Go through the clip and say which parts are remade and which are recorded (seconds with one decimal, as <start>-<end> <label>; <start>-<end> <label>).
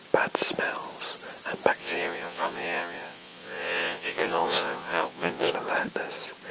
0.0-1.8 recorded; 1.8-5.5 remade; 5.5-6.5 recorded